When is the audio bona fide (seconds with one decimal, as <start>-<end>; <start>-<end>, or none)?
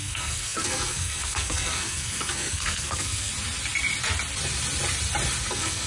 3.3-5.5